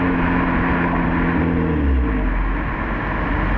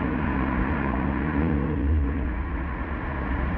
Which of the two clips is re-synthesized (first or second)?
second